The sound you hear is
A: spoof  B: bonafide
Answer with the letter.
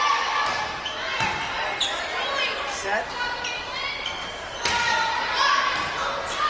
B